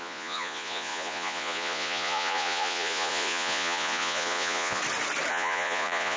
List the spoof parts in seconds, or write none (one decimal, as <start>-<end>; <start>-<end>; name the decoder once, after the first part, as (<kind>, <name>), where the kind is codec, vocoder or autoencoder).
0.0-4.8 (vocoder, Vocos); 5.3-6.2